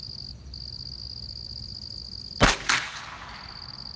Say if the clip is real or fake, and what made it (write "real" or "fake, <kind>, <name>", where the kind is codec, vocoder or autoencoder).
real